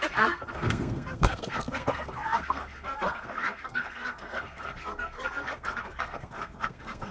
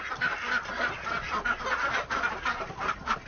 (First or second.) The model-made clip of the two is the first